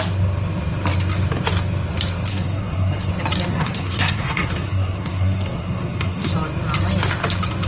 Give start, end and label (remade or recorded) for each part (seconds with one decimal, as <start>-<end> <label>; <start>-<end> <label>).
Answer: 0.0-2.3 recorded; 2.3-3.1 remade; 3.1-3.5 recorded; 3.5-6.3 remade; 6.3-7.7 recorded